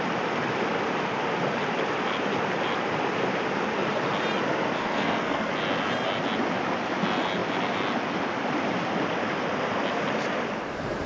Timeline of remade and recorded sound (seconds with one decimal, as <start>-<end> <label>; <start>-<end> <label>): 0.0-4.8 recorded; 4.8-5.5 remade; 5.5-11.1 recorded